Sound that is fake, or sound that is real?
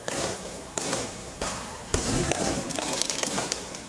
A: fake